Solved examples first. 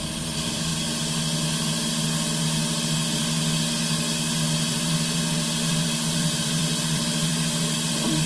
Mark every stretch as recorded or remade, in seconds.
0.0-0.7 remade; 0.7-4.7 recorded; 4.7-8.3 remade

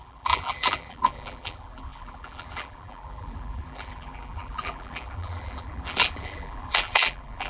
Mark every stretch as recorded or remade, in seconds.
0.0-7.5 remade

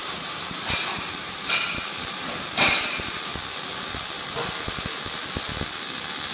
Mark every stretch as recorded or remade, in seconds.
0.0-3.3 remade; 3.3-6.3 recorded

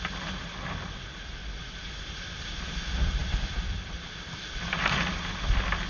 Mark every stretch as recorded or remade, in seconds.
0.0-1.4 recorded; 1.4-2.4 remade; 2.4-3.2 recorded; 3.2-5.1 remade; 5.1-5.9 recorded

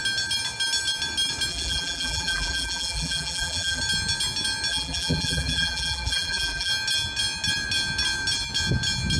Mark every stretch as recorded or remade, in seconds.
0.0-1.5 recorded; 1.5-3.8 remade; 3.8-4.7 recorded; 4.7-6.7 remade; 6.7-9.2 recorded